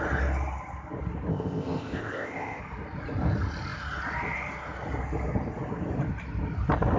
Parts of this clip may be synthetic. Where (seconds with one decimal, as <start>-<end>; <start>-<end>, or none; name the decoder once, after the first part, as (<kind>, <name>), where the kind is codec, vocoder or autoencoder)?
1.3-2.6 (codec, ZipCodec)